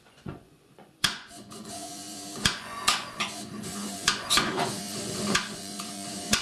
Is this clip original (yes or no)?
no